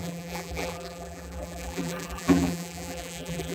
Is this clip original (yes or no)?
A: no